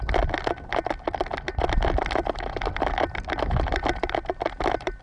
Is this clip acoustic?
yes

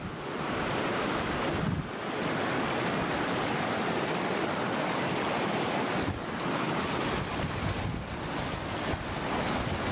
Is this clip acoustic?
yes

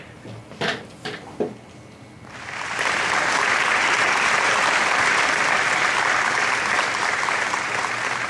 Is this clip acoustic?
yes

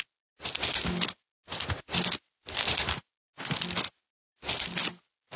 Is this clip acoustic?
yes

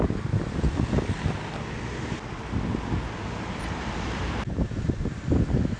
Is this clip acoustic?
yes